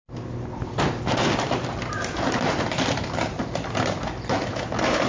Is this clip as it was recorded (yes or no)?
yes